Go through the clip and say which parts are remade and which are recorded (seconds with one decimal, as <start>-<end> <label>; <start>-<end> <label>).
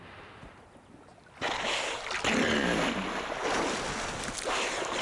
0.0-5.0 recorded